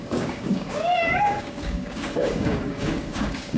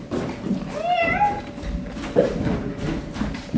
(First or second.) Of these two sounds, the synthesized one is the first